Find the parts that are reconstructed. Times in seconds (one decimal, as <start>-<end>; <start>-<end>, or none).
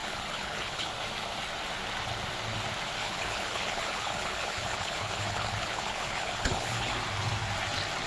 0.0-0.9; 3.0-6.9